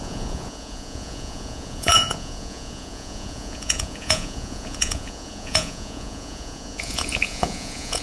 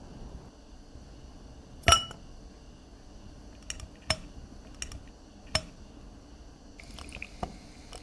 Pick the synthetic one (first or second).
first